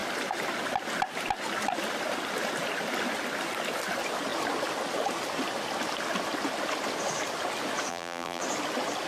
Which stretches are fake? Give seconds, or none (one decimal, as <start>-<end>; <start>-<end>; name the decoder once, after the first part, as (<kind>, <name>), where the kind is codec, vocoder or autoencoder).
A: 7.9-8.4 (vocoder, BigVGAN v2)